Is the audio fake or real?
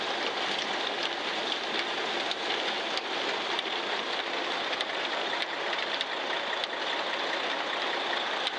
real